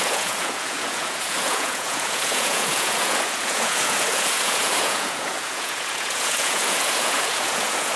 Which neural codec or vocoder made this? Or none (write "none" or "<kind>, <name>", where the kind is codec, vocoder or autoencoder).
vocoder, Vocos